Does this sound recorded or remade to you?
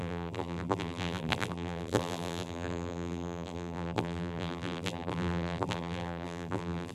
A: remade